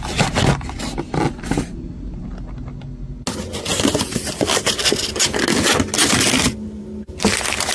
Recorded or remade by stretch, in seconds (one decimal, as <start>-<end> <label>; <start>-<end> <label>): 0.0-7.7 recorded